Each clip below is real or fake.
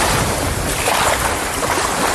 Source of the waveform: real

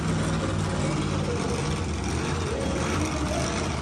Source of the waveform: real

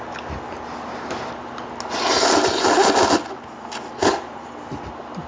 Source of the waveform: real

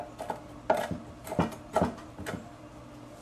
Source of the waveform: real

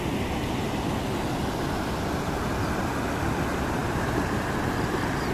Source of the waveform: real